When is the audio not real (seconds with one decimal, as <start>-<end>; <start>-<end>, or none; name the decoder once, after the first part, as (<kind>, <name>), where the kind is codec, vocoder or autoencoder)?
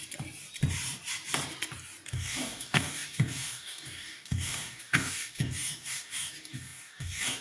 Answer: 2.1-7.4 (codec, DAC)